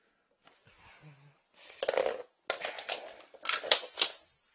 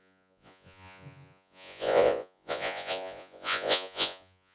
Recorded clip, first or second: first